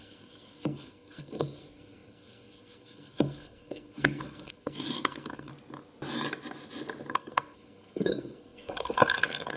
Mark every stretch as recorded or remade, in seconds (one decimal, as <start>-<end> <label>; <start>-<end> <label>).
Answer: 0.0-5.5 remade; 5.5-7.1 recorded; 7.1-9.6 remade